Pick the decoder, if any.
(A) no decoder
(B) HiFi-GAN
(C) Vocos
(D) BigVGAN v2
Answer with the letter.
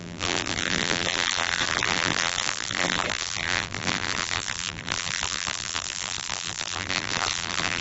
D